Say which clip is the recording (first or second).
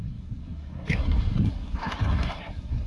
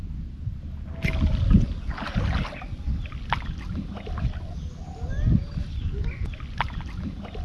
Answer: second